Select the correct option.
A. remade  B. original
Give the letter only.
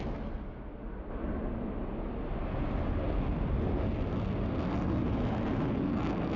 B